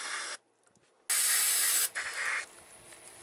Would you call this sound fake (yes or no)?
no